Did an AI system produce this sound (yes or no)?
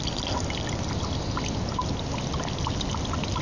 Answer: no